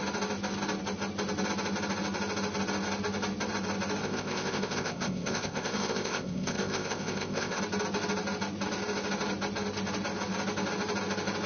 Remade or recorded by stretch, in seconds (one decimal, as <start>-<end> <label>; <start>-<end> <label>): 0.0-4.0 recorded; 4.0-7.6 remade; 7.6-11.5 recorded